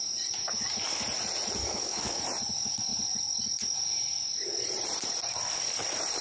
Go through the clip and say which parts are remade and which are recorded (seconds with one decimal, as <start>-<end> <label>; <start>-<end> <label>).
0.0-1.6 recorded; 1.6-2.2 remade; 2.2-6.2 recorded